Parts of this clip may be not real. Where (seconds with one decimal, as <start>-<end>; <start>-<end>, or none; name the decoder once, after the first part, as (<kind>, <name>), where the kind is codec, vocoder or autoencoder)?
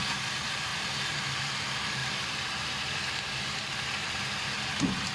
0.7-1.4 (vocoder, BigVGAN v2); 2.0-5.1